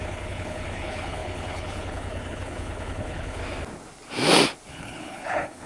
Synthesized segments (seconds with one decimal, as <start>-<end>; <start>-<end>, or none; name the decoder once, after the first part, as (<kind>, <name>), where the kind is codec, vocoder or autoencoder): 0.0-3.4 (codec, HILCodec); 4.7-5.7